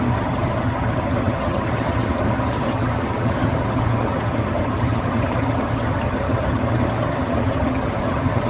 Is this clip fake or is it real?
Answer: fake